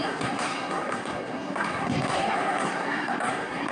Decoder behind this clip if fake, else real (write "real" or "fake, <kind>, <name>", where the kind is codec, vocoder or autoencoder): fake, codec, SNAC